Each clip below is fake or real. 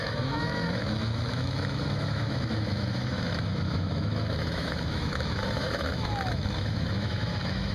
fake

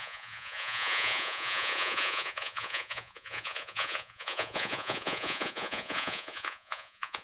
fake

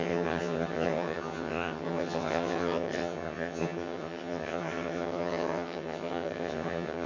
fake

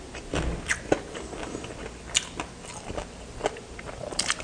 real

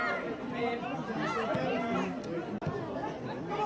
real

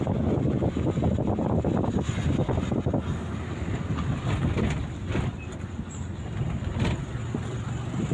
real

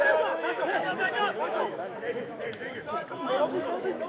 fake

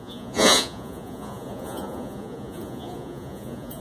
fake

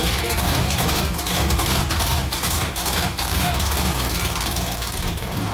fake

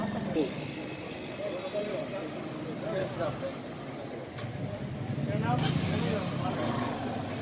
real